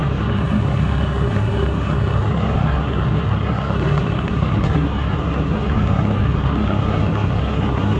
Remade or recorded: remade